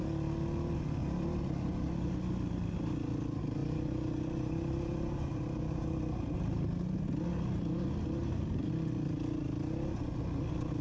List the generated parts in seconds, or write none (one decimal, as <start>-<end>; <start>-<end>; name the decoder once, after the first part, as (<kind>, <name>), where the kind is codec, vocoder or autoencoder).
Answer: 3.6-6.0 (vocoder, BigVGAN v2); 8.2-8.7